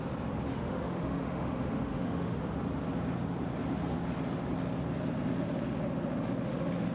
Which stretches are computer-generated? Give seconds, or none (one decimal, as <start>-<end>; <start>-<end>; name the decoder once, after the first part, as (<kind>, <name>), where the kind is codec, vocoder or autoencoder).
0.5-2.4 (autoencoder, DAC-VAE)